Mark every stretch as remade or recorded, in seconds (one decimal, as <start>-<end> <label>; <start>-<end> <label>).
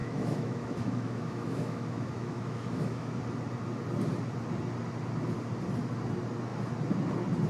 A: 0.0-3.2 remade; 3.2-7.5 recorded